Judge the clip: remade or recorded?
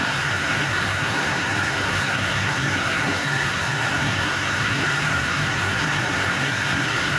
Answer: remade